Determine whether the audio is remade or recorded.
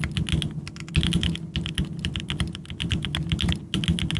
recorded